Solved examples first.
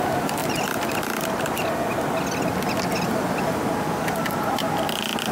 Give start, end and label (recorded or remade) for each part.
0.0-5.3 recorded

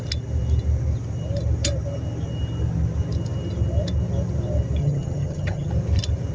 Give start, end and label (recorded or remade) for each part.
0.0-4.8 recorded; 4.8-5.7 remade; 5.7-6.3 recorded

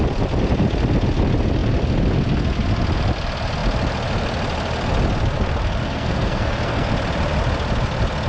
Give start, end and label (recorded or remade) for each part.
0.0-5.8 recorded; 5.8-6.9 remade; 6.9-8.3 recorded

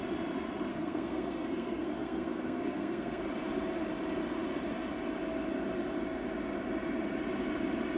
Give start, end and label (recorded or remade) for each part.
0.0-0.7 recorded; 0.7-3.2 remade; 3.2-8.0 recorded

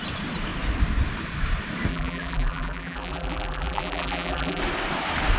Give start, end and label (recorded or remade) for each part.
0.0-1.9 recorded; 1.9-4.6 remade; 4.6-5.4 recorded

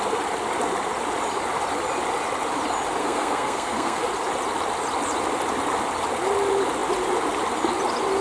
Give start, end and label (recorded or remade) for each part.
0.0-3.0 recorded; 3.0-4.0 remade; 4.0-8.2 recorded

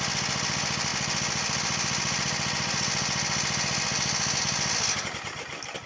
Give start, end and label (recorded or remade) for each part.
0.0-5.9 recorded